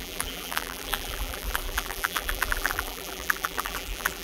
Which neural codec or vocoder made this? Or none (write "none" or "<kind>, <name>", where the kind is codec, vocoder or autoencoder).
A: vocoder, BigVGAN v2